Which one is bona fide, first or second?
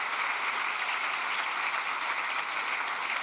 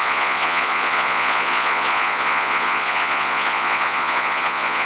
first